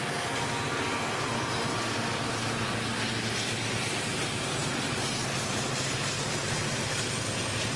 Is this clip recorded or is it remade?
recorded